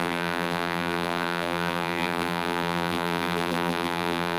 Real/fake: fake